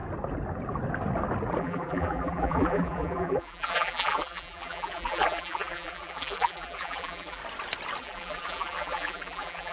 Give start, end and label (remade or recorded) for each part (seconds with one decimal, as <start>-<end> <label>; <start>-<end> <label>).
0.0-1.6 recorded; 1.6-7.4 remade; 7.4-8.0 recorded; 8.0-9.7 remade